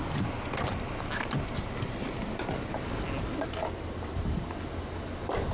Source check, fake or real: real